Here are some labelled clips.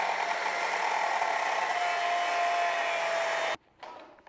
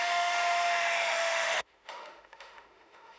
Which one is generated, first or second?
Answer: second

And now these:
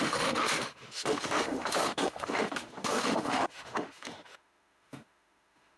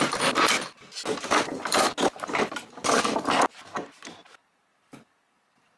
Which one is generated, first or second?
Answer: first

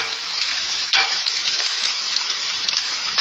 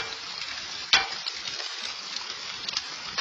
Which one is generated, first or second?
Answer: first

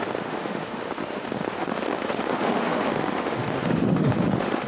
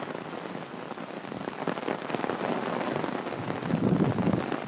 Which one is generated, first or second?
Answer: first